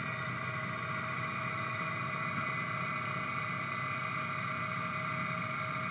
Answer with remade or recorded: recorded